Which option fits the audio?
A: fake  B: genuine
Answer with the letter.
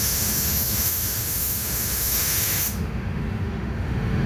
A